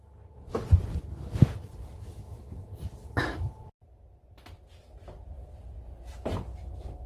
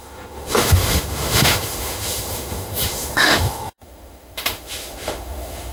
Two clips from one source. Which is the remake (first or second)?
second